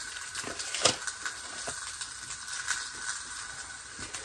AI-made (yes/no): no